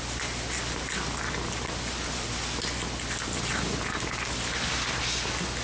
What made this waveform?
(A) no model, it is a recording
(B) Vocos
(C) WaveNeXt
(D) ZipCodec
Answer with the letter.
A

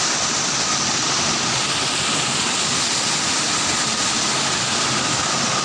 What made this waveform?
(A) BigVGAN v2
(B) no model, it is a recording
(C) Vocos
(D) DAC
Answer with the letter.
B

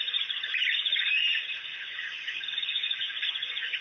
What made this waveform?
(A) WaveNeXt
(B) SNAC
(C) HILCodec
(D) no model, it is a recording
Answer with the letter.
D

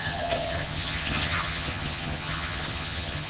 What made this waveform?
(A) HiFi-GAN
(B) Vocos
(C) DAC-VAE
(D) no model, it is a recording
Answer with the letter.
A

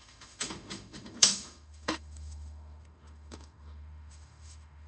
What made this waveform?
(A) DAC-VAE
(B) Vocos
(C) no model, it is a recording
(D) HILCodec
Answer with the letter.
A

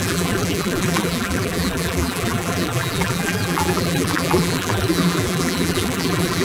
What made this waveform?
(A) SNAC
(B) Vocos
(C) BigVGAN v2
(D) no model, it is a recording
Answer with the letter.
C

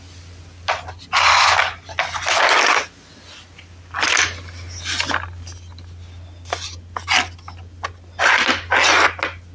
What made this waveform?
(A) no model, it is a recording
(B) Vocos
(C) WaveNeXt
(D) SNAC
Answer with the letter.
A